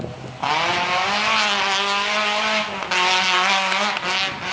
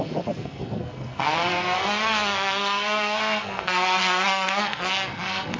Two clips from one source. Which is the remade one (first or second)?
second